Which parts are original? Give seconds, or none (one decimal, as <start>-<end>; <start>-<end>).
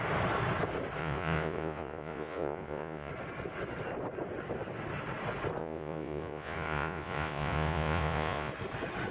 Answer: 0.0-1.0; 3.1-5.6; 8.5-9.1